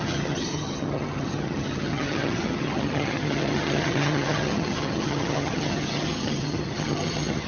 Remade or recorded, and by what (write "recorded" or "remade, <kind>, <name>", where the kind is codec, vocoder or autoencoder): remade, vocoder, HiFi-GAN